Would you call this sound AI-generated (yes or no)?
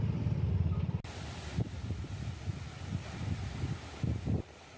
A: no